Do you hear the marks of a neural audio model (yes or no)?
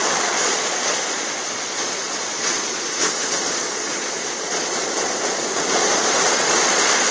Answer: yes